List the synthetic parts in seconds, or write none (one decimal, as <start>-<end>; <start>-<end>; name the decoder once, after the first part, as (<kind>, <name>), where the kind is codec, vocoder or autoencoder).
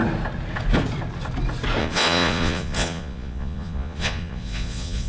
1.8-5.1 (vocoder, Vocos)